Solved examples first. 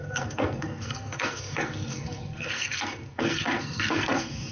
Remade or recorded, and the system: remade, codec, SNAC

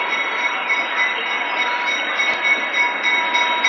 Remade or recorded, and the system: recorded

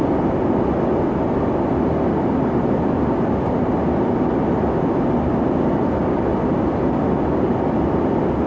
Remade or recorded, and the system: recorded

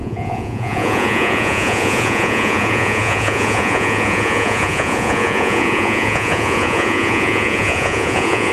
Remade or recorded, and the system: remade, vocoder, Vocos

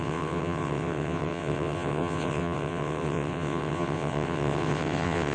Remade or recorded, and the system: remade, vocoder, WaveNeXt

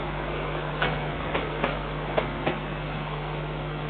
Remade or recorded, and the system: remade, codec, SNAC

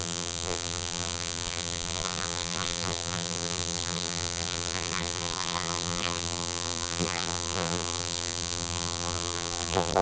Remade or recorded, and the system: remade, vocoder, BigVGAN v2